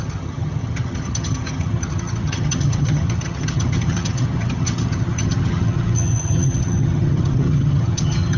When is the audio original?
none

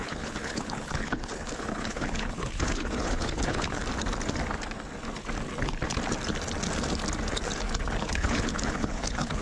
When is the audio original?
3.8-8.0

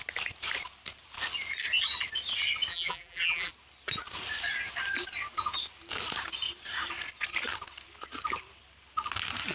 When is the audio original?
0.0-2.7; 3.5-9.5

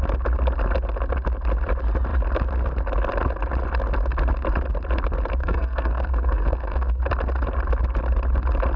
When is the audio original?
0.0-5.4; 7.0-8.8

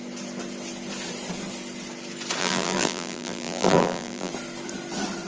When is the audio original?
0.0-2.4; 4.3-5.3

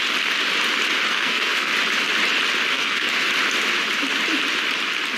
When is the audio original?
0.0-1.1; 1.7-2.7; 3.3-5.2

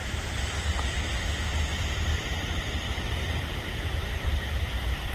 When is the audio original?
0.8-1.7

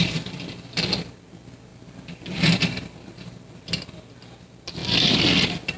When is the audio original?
0.0-5.8